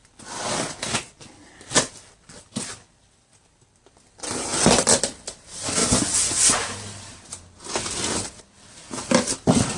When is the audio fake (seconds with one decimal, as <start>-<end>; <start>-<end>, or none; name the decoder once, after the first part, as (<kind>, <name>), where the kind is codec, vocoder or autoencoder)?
0.0-5.8 (vocoder, BigVGAN v2); 8.4-9.8